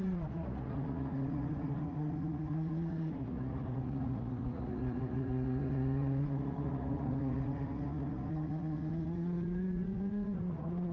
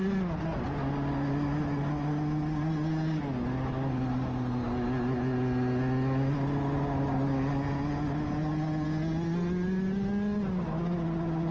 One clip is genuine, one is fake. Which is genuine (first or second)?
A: second